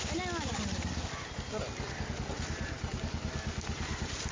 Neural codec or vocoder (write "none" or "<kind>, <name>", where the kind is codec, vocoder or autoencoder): none